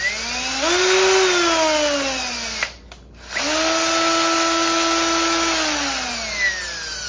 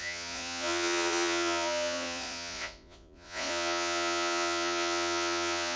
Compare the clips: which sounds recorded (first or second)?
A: first